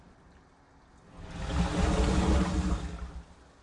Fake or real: real